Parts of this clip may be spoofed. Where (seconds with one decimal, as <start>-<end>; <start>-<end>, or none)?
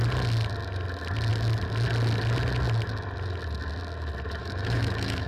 4.4-5.3